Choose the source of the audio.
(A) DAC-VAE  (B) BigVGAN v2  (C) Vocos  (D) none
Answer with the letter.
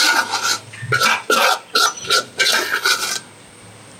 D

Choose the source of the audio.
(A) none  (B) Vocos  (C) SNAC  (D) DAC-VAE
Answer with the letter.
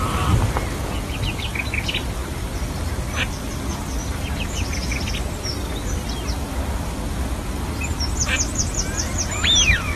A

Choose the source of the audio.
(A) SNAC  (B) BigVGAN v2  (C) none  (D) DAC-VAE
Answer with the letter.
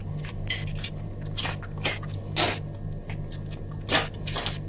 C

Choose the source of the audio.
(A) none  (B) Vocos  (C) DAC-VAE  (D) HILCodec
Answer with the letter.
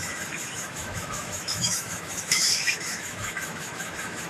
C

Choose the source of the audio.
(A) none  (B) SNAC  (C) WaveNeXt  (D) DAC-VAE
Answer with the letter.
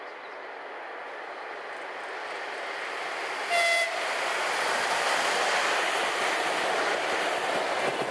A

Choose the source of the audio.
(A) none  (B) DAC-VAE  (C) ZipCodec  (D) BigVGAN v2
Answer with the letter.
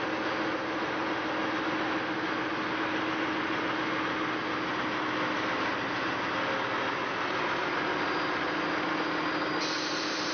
A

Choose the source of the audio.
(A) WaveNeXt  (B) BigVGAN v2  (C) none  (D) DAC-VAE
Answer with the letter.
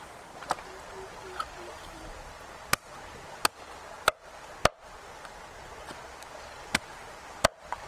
C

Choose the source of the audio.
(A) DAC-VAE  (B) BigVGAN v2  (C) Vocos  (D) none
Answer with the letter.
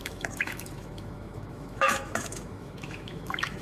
A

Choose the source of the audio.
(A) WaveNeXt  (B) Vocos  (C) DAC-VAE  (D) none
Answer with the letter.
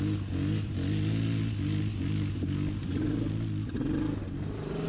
D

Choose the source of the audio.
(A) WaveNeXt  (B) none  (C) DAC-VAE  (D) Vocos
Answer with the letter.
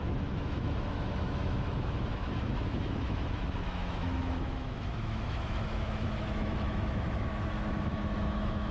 C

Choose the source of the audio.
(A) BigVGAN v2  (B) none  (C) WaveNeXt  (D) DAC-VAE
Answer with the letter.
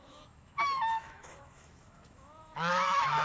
D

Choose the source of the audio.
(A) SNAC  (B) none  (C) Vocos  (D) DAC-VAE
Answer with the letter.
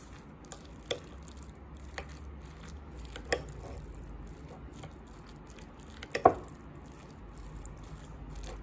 B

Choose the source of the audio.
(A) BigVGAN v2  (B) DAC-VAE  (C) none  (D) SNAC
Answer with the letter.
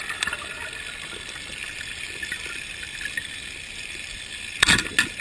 C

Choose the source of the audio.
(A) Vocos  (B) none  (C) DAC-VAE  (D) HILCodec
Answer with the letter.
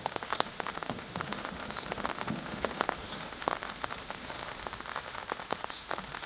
C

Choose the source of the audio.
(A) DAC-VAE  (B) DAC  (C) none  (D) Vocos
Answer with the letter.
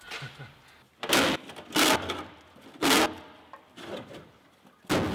C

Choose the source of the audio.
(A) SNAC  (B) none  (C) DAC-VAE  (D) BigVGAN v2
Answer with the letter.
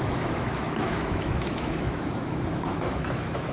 C